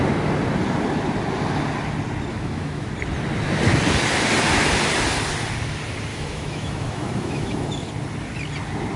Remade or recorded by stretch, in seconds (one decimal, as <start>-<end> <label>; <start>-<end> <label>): 0.0-2.3 recorded; 2.3-2.9 remade; 2.9-6.1 recorded; 6.1-7.9 remade; 7.9-9.0 recorded